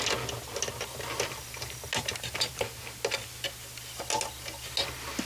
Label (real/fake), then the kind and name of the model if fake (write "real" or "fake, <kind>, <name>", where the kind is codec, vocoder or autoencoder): real